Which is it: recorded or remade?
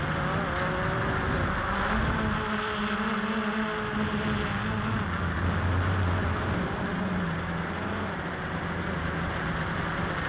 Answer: recorded